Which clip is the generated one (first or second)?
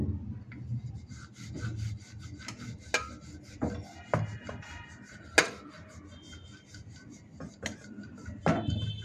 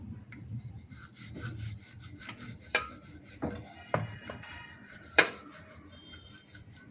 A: second